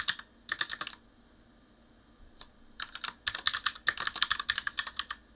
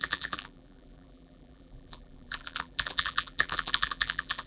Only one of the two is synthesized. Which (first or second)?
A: second